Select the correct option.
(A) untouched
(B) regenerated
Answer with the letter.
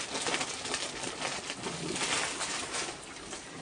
A